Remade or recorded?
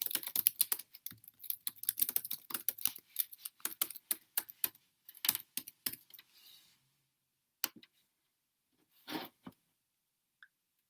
recorded